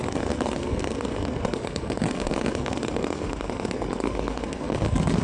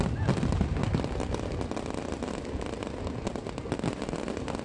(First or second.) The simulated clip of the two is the first